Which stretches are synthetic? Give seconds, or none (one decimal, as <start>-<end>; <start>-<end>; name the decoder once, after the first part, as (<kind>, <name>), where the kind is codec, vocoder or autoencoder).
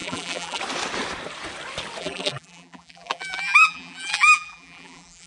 0.0-0.6 (vocoder, BigVGAN v2); 2.0-5.3